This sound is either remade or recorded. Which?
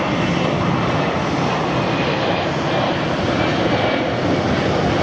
recorded